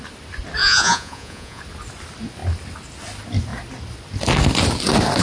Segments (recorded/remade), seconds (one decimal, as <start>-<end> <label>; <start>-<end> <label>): 0.0-0.6 recorded; 0.6-1.6 remade; 1.6-5.2 recorded